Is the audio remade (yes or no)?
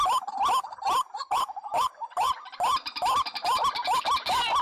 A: no